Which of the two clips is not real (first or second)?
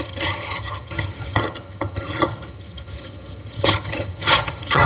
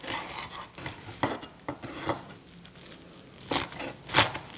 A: first